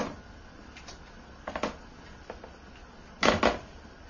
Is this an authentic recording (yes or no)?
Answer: yes